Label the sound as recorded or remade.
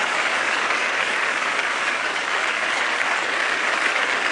remade